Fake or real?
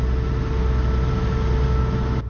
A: real